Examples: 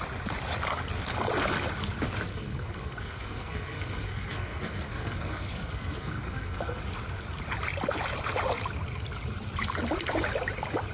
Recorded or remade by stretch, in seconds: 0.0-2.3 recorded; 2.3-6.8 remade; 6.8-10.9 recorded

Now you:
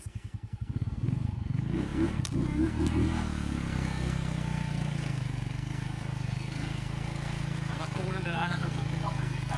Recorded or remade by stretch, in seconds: 0.0-9.6 remade

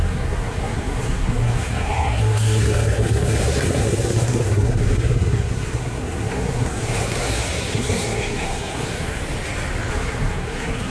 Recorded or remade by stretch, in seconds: 0.0-9.2 remade; 9.2-9.9 recorded; 9.9-10.9 remade